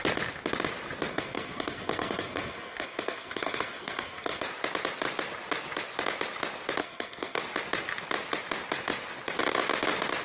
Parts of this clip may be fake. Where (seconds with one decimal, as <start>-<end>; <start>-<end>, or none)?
1.1-4.4; 6.8-7.4